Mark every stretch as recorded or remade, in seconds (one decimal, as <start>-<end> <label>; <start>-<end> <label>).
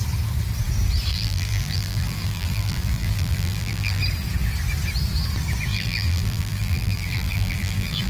0.0-1.1 recorded; 1.1-4.0 remade; 4.0-5.7 recorded; 5.7-8.1 remade